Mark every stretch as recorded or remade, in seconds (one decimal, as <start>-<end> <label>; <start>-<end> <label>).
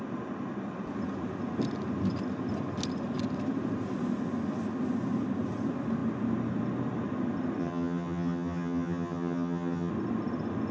0.0-7.6 recorded; 7.6-9.9 remade; 9.9-10.7 recorded